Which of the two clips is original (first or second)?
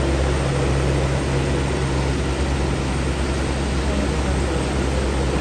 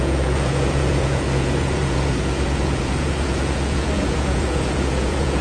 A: first